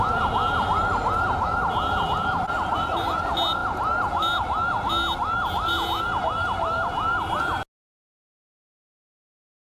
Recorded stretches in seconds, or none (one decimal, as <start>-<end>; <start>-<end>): 0.0-9.7